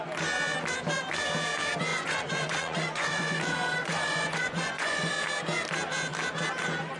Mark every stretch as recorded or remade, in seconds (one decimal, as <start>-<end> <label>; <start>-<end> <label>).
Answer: 0.0-1.9 recorded; 1.9-3.4 remade; 3.4-3.8 recorded; 3.8-5.1 remade; 5.1-7.0 recorded